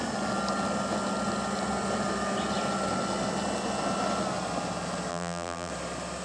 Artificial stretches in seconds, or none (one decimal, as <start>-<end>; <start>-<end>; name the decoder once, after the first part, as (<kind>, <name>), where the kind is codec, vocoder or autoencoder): 5.1-5.7 (vocoder, BigVGAN v2)